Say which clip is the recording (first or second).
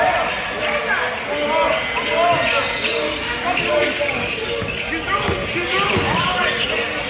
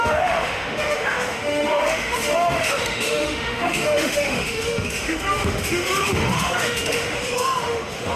first